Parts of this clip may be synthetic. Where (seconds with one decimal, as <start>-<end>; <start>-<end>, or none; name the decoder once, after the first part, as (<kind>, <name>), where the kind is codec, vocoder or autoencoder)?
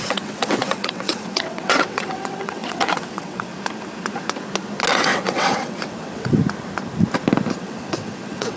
0.0-3.5 (vocoder, WaveNeXt); 4.9-6.4; 7.6-8.6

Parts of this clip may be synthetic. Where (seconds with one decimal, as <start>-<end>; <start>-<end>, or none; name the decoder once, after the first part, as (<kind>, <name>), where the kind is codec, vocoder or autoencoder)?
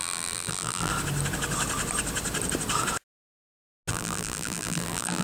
0.0-0.9 (vocoder, BigVGAN v2); 3.9-5.2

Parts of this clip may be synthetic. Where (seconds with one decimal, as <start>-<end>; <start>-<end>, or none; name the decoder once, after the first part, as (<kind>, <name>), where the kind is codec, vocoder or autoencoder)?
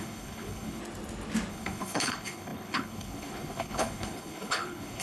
0.0-0.8 (codec, HILCodec); 1.5-5.0